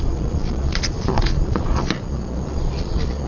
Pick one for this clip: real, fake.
fake